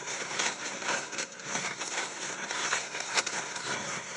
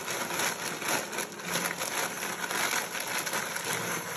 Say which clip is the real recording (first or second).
second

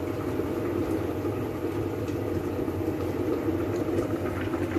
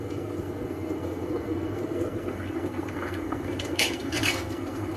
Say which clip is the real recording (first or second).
first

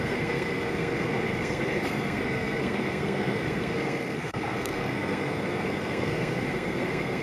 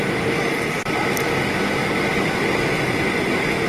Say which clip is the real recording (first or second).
second